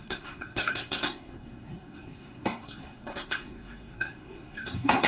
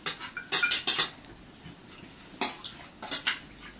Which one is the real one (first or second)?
second